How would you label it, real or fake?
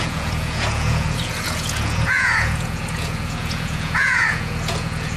fake